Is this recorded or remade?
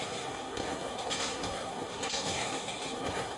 remade